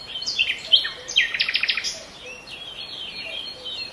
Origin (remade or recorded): remade